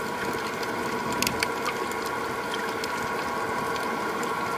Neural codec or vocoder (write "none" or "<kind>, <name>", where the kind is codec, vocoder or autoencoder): none